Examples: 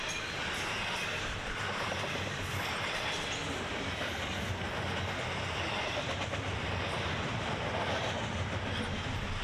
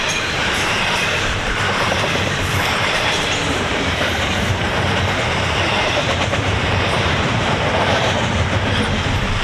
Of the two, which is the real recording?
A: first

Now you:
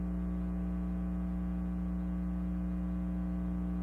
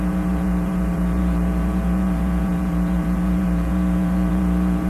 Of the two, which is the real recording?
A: first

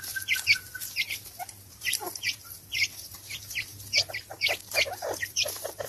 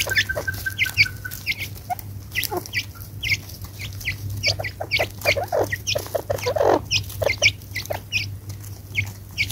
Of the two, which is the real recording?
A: second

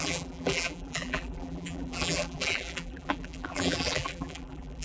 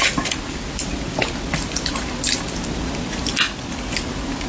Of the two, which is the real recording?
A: second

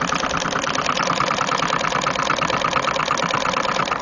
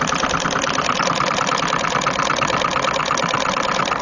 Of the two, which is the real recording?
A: first